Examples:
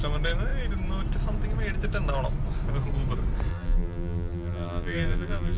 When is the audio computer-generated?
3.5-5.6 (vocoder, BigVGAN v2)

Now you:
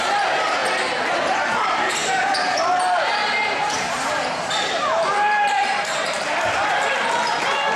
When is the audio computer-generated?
0.0-0.6 (vocoder, BigVGAN v2); 1.6-7.8

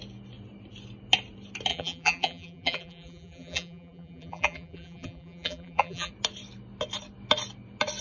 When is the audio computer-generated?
1.7-6.1 (vocoder, BigVGAN v2)

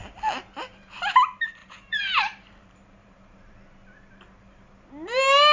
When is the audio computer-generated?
1.6-3.5 (vocoder, BigVGAN v2)

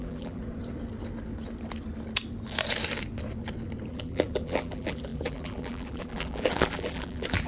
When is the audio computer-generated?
0.0-0.4 (vocoder, BigVGAN v2); 3.9-7.5

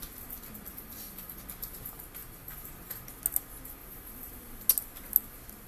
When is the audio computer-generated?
0.7-1.4 (vocoder, BigVGAN v2); 2.2-3.1; 3.8-4.3

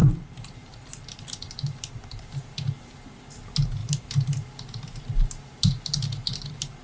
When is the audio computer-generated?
0.0-2.3 (vocoder, BigVGAN v2)